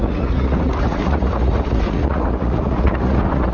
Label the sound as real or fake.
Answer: fake